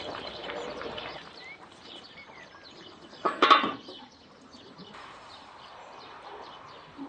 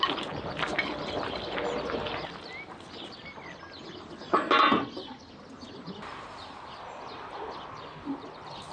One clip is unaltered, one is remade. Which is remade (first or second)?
first